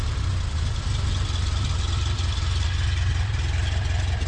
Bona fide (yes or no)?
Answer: yes